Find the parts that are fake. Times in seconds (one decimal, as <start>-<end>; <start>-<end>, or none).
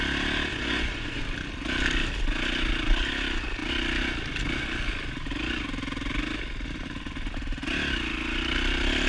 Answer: 0.5-1.2